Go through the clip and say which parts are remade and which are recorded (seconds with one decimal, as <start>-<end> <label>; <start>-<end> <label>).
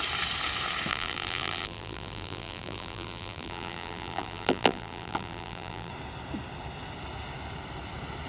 0.0-0.9 recorded; 0.9-5.9 remade; 5.9-8.3 recorded